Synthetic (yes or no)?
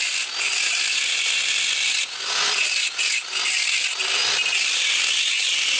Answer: no